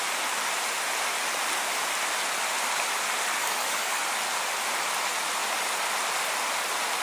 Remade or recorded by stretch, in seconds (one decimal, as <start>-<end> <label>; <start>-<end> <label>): 0.0-3.4 recorded; 3.4-4.0 remade; 4.0-7.0 recorded